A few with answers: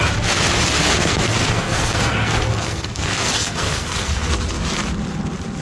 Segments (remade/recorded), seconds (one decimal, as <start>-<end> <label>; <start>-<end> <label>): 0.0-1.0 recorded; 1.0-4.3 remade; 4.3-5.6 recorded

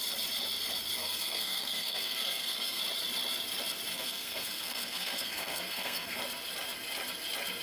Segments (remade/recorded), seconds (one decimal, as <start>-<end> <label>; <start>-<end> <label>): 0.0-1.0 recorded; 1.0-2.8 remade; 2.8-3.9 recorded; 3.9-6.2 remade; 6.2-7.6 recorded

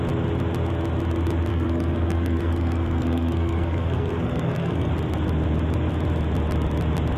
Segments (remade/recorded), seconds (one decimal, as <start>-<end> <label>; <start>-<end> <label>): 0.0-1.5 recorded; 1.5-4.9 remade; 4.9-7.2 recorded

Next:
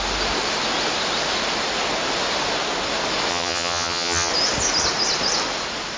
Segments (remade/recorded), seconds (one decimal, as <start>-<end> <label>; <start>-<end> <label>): 0.0-3.3 recorded; 3.3-4.3 remade; 4.3-6.0 recorded

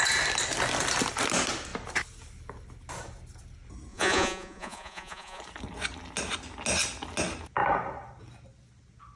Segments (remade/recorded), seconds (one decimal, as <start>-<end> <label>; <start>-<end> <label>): 0.0-3.9 recorded; 3.9-5.4 remade; 5.4-9.2 recorded

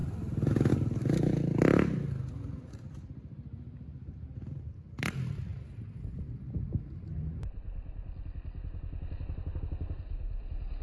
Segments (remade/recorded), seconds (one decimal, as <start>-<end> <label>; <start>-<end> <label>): 0.0-10.8 recorded